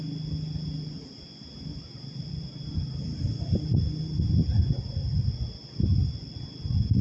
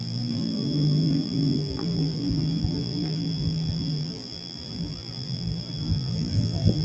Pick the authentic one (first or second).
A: first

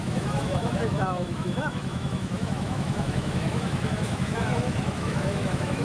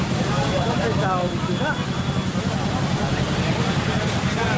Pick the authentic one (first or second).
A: second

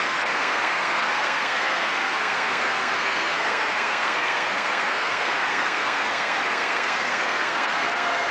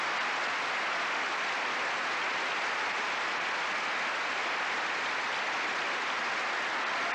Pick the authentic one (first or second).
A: second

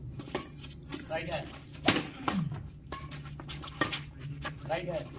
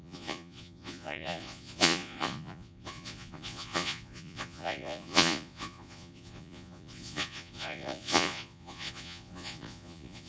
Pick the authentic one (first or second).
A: first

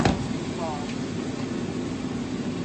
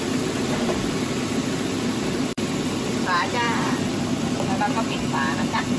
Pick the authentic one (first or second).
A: first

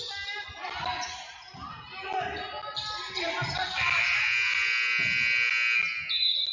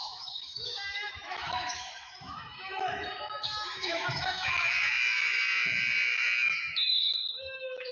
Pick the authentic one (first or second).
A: first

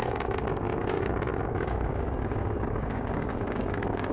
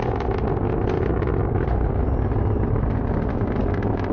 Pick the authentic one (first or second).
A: second